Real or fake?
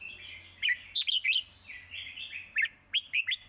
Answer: real